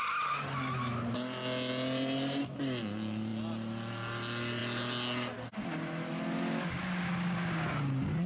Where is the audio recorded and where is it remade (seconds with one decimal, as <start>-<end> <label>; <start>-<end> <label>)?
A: 0.0-8.3 recorded